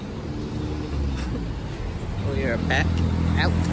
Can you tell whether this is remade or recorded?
recorded